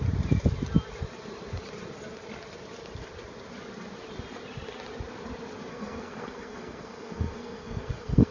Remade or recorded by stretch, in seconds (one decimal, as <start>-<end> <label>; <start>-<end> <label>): 0.0-5.7 recorded; 5.7-8.3 remade